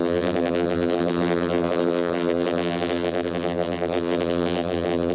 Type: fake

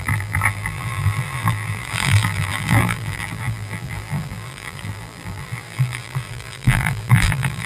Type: fake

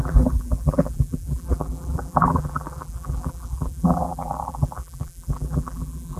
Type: fake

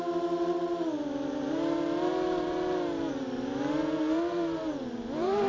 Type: fake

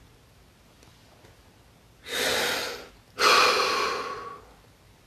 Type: real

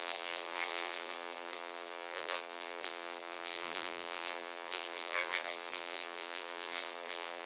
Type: fake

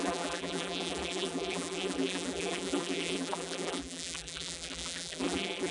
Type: fake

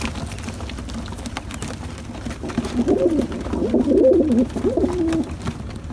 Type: real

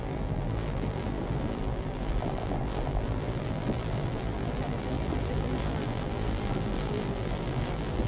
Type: fake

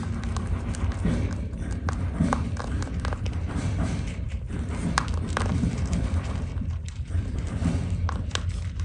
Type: fake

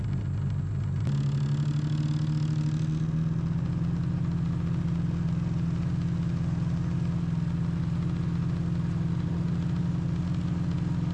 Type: real